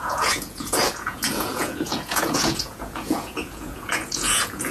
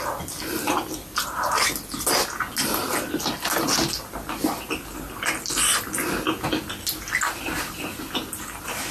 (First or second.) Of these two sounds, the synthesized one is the first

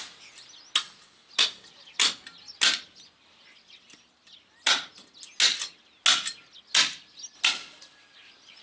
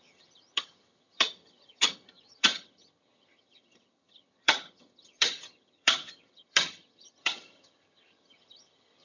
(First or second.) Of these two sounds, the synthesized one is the second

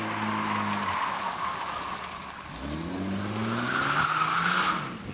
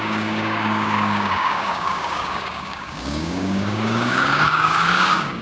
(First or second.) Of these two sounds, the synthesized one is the second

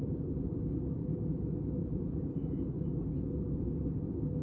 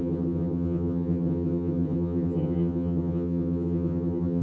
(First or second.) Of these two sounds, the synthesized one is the second